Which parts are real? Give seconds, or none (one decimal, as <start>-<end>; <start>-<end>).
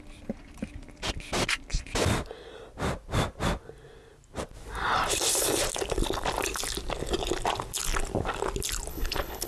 0.0-8.9